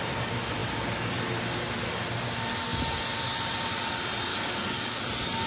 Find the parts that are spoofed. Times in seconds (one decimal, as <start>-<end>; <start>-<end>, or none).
4.3-5.0